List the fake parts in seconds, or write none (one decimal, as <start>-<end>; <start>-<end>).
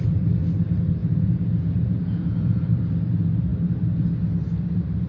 1.0-2.7